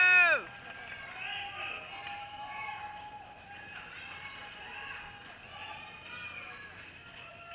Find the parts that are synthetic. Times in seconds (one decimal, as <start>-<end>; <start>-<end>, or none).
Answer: 2.2-2.8